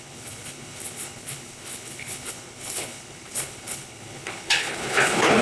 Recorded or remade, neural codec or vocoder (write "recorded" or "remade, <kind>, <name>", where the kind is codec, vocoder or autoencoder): remade, codec, HILCodec